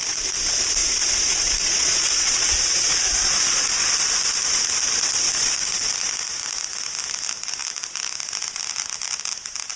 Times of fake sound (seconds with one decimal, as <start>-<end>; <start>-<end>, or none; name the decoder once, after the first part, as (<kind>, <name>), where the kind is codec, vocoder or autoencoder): 0.8-3.7 (vocoder, Vocos)